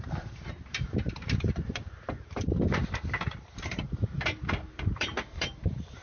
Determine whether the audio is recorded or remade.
remade